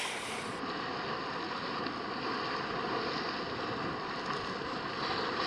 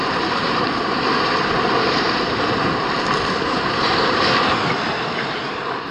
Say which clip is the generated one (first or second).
second